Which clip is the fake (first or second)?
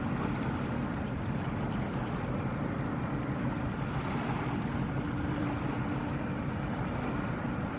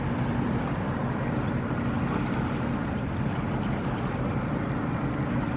first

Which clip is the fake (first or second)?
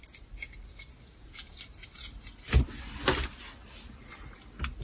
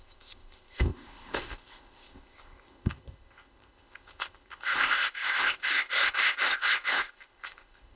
second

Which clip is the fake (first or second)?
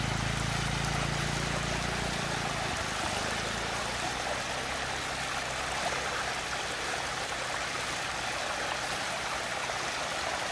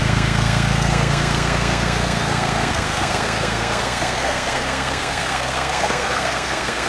second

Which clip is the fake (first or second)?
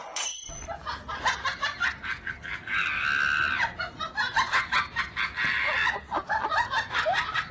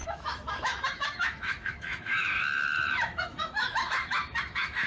second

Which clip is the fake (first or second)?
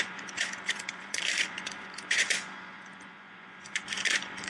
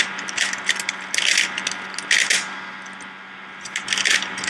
first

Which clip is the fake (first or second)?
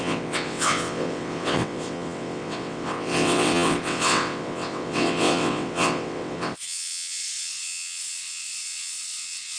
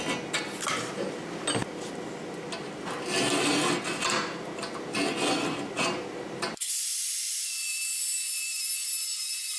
first